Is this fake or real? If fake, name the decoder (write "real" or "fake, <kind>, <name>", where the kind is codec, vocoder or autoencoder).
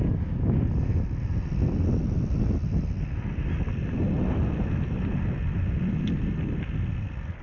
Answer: real